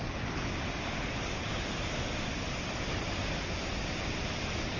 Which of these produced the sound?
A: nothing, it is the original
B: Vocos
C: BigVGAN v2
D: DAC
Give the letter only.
C